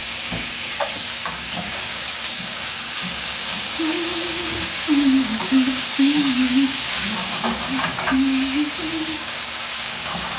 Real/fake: fake